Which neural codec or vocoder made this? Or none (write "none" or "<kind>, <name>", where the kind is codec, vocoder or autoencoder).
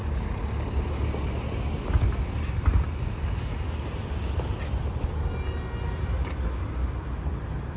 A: none